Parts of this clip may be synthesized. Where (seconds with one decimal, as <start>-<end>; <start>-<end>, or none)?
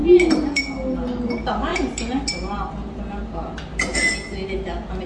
none